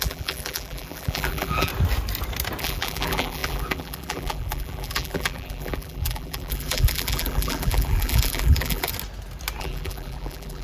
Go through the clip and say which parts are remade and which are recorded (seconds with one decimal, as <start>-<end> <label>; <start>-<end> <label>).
0.0-1.7 remade; 1.7-2.6 recorded; 2.6-8.9 remade; 8.9-9.6 recorded; 9.6-10.6 remade

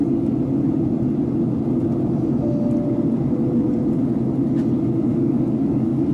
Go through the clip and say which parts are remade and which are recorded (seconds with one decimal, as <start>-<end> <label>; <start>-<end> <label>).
0.0-5.1 recorded; 5.1-6.1 remade